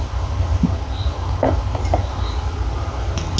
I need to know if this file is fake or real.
real